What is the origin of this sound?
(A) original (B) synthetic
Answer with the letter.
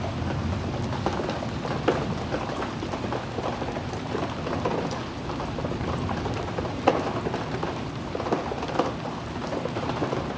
A